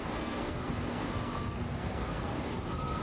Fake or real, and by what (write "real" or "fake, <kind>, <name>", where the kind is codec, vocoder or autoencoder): fake, codec, SNAC